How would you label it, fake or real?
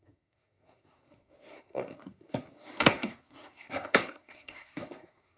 fake